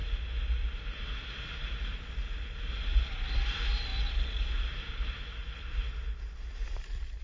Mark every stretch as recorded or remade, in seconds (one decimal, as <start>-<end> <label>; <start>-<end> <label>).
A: 0.0-7.2 recorded

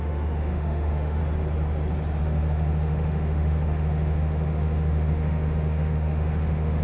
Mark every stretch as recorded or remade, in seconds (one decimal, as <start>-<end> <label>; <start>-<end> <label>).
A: 0.0-1.2 remade; 1.2-2.2 recorded; 2.2-6.8 remade